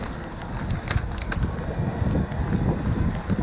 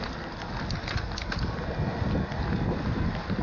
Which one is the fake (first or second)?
first